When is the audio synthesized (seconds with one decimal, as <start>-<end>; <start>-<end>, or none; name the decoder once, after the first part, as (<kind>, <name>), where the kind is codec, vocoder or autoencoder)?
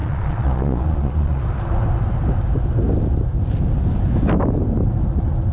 0.0-1.4 (vocoder, Vocos)